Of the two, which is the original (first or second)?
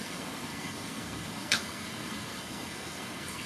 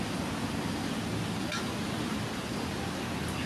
second